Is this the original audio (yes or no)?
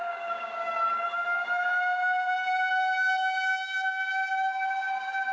no